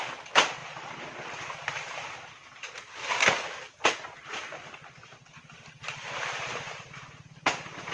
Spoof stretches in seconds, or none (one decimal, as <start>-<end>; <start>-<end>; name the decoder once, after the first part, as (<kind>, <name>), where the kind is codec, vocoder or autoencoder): 5.2-6.5 (vocoder, BigVGAN v2)